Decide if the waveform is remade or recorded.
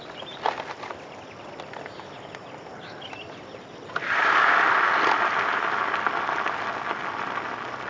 recorded